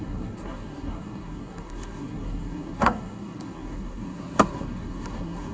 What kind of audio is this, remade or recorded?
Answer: remade